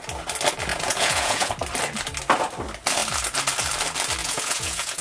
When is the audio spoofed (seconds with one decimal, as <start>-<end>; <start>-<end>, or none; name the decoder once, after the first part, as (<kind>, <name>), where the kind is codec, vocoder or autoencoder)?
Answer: 0.7-1.5 (vocoder, Vocos); 4.2-5.0